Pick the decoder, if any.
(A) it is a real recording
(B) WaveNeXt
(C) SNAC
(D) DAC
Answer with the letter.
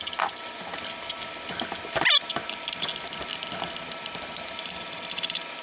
A